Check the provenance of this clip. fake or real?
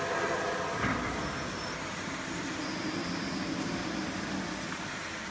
real